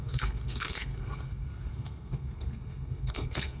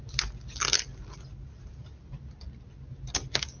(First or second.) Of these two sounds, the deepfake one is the first